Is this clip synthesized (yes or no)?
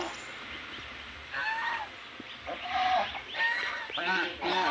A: no